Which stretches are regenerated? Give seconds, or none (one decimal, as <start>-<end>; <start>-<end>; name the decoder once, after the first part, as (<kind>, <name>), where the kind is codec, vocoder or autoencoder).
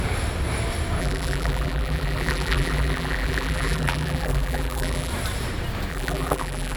1.0-5.1 (vocoder, BigVGAN v2); 5.9-6.8